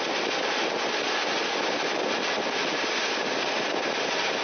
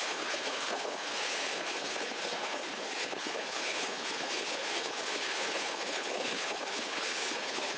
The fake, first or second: second